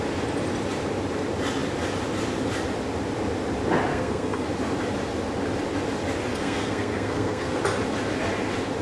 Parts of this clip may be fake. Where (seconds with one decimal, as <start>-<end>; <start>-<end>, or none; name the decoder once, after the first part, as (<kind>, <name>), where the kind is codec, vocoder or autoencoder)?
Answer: 3.9-4.5 (codec, SNAC); 6.3-7.6